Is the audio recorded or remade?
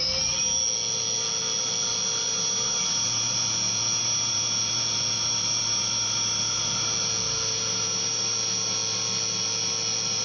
recorded